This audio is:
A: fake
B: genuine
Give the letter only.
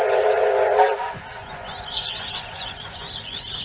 A